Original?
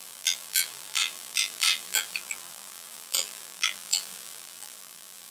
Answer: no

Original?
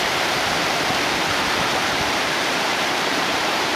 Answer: no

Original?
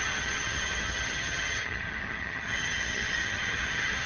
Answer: no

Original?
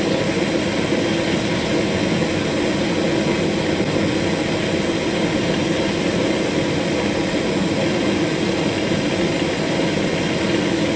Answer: yes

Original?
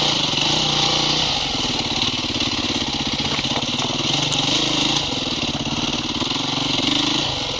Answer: yes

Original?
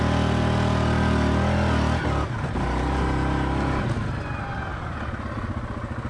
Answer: yes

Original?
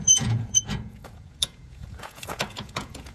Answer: no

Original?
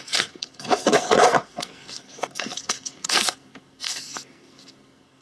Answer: no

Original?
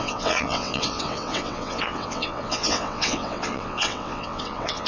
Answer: no